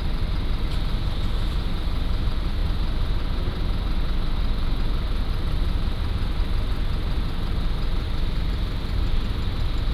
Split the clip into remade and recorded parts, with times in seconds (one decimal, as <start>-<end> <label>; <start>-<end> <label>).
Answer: 0.0-9.9 recorded